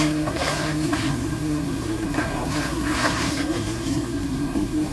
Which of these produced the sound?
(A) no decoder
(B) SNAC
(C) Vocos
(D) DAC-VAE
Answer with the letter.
B